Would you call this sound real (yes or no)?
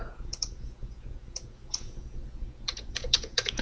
no